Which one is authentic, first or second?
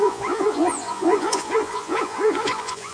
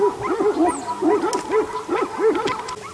second